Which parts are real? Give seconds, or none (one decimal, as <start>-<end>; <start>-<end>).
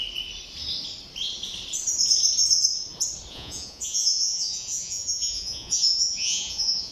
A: 0.0-3.3